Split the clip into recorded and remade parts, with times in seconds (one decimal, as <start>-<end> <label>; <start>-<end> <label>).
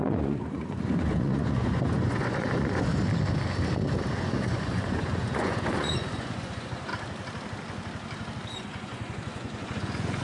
0.0-2.9 remade; 2.9-4.1 recorded; 4.1-6.9 remade; 6.9-8.6 recorded; 8.6-10.2 remade